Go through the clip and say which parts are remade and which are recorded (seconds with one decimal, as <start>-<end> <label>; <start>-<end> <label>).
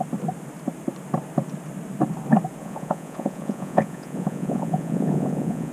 0.0-2.6 recorded; 2.6-5.7 remade